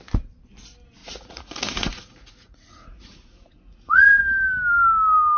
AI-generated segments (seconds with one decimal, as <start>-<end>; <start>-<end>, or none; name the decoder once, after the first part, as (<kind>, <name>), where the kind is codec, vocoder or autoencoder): 1.0-4.2 (vocoder, Vocos)